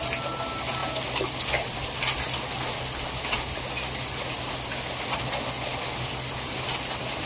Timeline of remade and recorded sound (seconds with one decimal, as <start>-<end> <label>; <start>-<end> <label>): 0.0-7.3 recorded